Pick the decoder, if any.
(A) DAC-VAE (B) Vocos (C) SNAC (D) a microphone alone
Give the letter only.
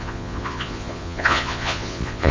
B